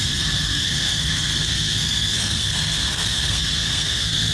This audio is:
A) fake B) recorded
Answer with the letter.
A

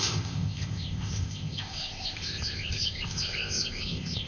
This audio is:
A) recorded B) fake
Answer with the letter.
B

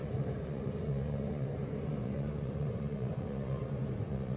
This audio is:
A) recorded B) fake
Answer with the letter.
B